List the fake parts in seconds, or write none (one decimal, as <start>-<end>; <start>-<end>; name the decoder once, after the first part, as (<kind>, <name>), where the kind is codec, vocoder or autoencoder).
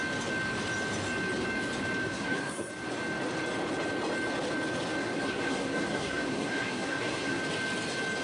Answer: 2.0-2.7 (codec, SNAC); 5.0-7.4